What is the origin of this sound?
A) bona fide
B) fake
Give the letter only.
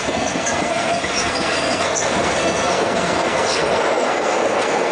B